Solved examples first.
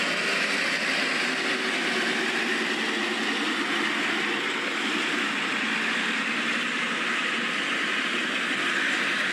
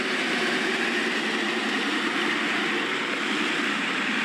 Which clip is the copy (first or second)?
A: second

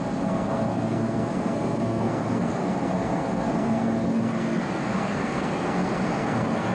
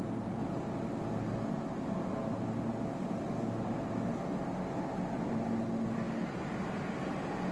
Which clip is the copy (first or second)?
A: first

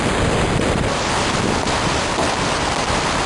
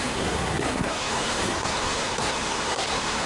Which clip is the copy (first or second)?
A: second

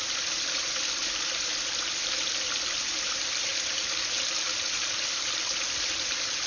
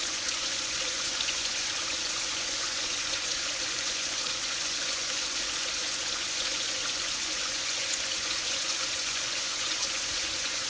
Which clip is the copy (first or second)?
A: second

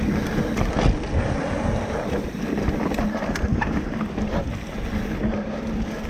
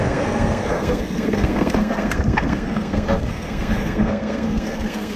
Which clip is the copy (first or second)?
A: second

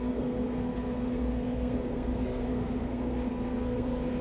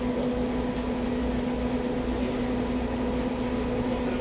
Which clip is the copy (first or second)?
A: first